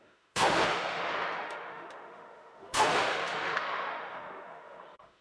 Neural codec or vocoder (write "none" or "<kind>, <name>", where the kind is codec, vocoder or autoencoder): autoencoder, DAC-VAE